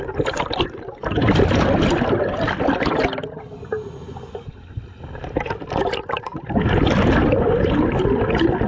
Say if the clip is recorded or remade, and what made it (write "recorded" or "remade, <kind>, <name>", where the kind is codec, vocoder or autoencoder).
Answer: recorded